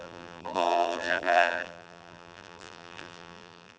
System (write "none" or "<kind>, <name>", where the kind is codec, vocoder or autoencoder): vocoder, BigVGAN v2